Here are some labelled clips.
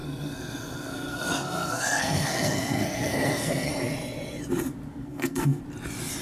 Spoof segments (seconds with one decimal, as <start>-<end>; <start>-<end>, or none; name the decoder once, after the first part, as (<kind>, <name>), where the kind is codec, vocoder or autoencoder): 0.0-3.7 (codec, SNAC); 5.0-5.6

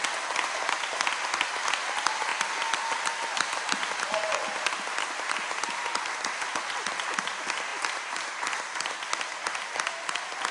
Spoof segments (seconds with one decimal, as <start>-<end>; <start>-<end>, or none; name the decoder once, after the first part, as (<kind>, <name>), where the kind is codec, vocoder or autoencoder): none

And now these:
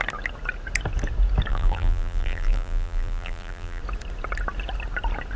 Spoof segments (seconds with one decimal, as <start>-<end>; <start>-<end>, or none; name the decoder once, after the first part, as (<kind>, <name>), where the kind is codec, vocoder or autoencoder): 1.5-3.8 (vocoder, BigVGAN v2)

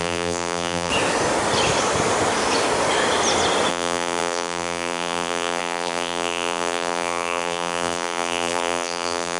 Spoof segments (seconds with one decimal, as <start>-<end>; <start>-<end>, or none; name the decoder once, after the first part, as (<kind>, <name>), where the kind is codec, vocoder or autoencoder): 0.0-0.9 (vocoder, BigVGAN v2); 3.7-9.4